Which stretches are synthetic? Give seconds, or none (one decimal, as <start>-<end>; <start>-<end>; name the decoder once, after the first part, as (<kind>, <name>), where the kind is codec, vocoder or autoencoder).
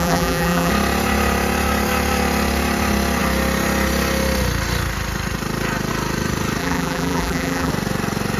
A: 0.0-0.7 (vocoder, BigVGAN v2); 6.6-7.7